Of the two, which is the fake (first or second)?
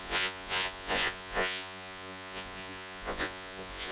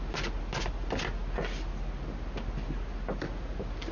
first